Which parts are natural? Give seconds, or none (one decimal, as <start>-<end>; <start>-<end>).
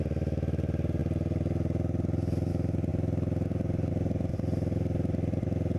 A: 0.0-5.8